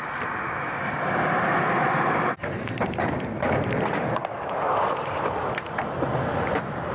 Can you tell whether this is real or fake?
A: real